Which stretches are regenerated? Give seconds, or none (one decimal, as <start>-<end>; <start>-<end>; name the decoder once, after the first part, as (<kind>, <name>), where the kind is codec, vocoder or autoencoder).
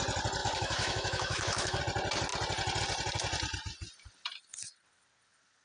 0.4-1.8 (autoencoder, DAC-VAE)